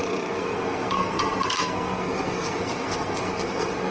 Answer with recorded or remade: remade